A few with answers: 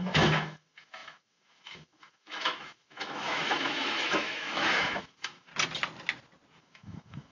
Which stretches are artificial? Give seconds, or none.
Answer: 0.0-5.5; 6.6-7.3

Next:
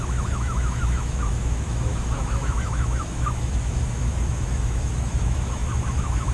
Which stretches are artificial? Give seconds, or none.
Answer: 0.0-6.3

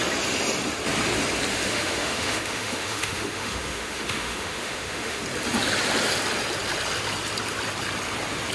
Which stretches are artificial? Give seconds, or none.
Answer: 1.5-5.2

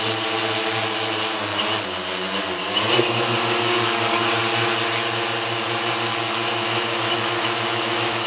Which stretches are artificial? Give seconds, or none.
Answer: 6.1-8.3

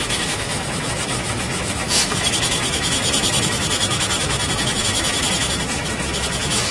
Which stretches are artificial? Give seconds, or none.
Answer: 0.0-6.7

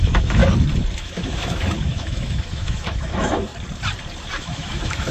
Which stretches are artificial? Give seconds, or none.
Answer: 0.0-0.4; 1.0-3.5; 4.4-5.1

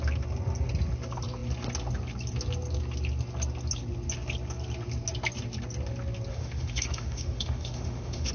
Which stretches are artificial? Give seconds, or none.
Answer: 6.3-8.3